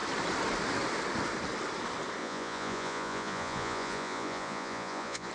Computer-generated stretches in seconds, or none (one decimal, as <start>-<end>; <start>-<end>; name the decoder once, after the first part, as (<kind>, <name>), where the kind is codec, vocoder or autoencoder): 2.2-5.3 (vocoder, Vocos)